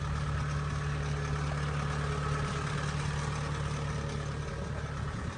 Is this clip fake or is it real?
real